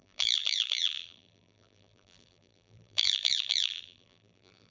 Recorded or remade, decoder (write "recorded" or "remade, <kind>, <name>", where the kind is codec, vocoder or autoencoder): remade, vocoder, BigVGAN v2